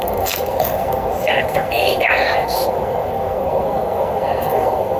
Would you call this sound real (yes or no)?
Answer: no